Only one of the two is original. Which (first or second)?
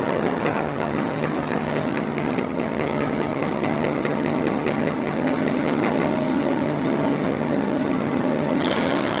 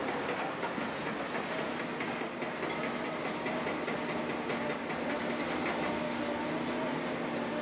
second